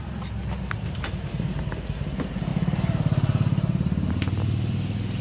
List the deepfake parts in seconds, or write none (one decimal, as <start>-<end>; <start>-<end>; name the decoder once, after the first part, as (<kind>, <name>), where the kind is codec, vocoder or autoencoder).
none